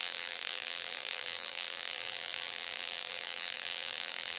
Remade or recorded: remade